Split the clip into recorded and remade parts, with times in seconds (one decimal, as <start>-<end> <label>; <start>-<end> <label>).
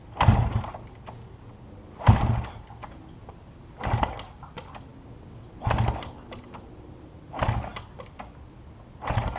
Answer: 0.0-9.4 recorded